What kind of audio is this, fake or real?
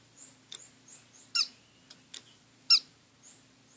real